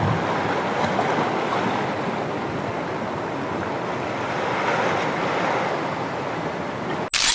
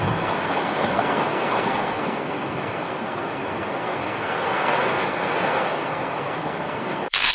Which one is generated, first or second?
second